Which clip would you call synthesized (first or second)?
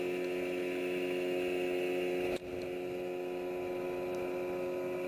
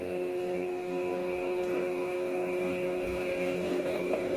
second